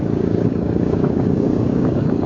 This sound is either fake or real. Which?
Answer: fake